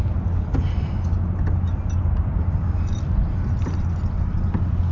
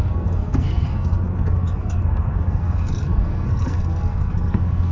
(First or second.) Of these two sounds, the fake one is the second